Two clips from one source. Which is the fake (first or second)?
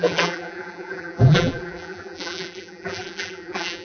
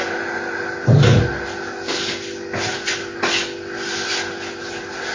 first